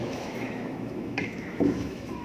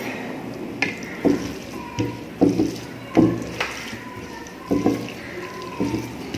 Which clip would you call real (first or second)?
second